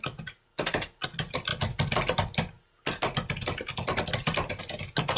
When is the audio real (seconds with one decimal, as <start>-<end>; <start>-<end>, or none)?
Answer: 0.0-5.2